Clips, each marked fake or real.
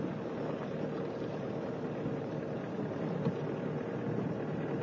real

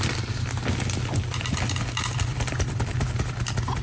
real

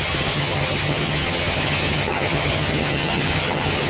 fake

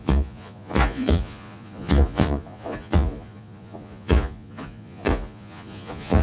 fake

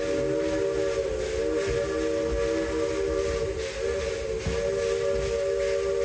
real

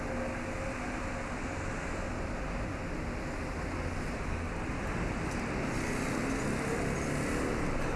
real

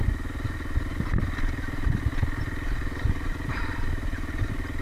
real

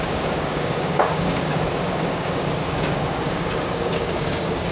fake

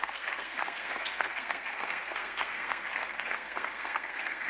fake